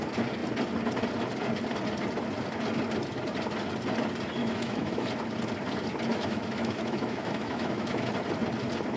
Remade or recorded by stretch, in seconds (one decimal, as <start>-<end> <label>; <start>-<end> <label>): 0.0-4.4 recorded; 4.4-5.1 remade; 5.1-6.1 recorded; 6.1-8.1 remade; 8.1-9.0 recorded